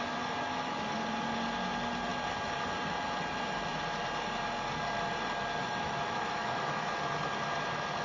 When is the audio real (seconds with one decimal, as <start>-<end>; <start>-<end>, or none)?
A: 0.0-5.6; 6.9-8.0